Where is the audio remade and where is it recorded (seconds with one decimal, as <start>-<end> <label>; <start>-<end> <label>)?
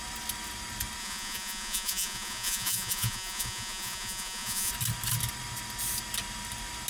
0.0-1.0 recorded; 1.0-4.7 remade; 4.7-6.9 recorded